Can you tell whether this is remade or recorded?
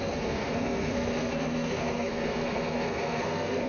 remade